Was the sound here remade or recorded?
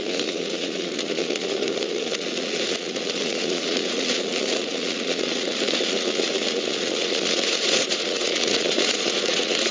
remade